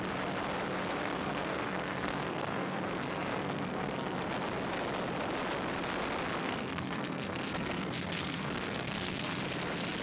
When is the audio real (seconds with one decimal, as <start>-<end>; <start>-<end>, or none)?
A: 0.0-1.0; 4.2-6.4; 9.4-10.0